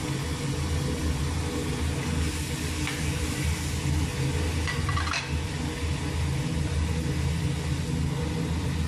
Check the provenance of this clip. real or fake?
real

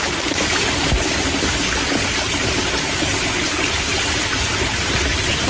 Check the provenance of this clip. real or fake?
real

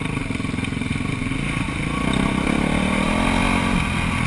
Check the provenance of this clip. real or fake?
real